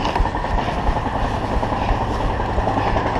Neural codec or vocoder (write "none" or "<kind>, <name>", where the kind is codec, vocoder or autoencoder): none